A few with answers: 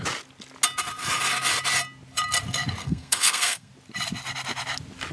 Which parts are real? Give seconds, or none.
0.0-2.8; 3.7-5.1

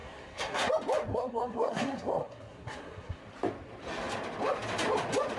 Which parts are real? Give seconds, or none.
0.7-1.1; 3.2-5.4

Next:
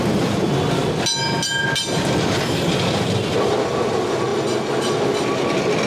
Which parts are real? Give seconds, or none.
0.0-5.9